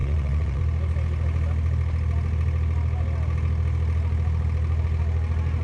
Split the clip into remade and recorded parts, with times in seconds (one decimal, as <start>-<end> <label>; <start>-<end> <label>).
0.0-0.6 remade; 0.6-5.6 recorded